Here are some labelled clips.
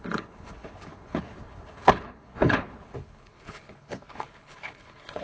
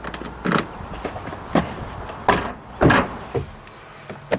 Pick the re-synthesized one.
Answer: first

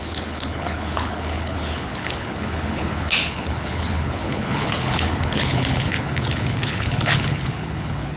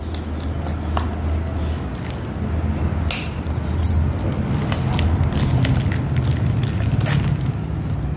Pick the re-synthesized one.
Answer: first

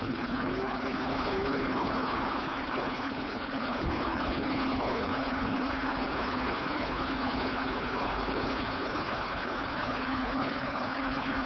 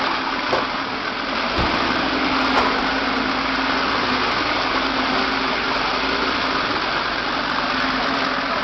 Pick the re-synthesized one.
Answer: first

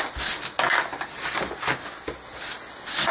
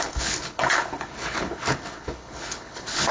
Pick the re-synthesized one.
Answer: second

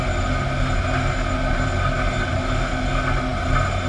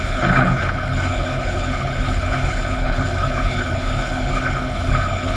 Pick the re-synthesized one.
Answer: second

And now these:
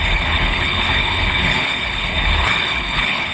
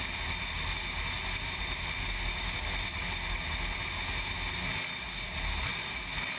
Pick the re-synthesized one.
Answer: first